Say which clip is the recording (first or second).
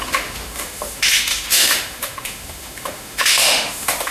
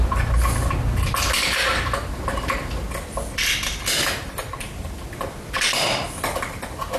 second